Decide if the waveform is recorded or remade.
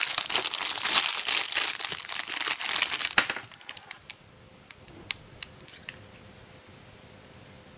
recorded